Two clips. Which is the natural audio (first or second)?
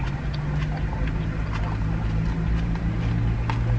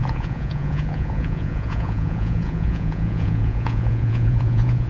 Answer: first